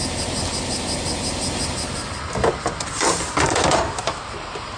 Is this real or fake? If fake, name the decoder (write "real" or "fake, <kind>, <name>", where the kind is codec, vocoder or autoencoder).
real